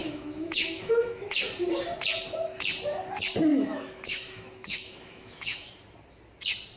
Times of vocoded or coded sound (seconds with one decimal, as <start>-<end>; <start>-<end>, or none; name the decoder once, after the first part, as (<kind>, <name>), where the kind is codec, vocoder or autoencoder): 0.0-1.4 (autoencoder, DAC-VAE); 3.5-5.7